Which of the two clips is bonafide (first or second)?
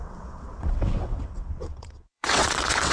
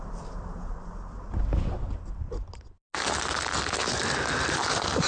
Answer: second